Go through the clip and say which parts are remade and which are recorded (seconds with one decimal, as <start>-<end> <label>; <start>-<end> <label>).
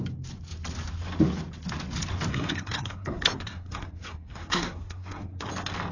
0.0-2.3 recorded; 2.3-5.5 remade; 5.5-5.9 recorded